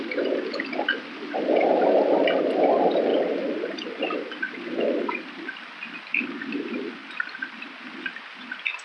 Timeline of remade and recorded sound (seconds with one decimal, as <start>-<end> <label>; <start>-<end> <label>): 0.0-8.8 recorded